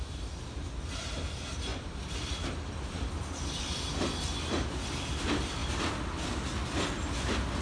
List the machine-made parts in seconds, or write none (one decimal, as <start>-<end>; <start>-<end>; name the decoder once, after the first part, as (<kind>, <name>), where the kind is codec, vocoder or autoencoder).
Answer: none